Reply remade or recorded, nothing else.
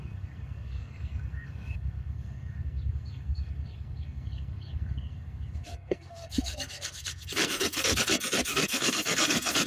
remade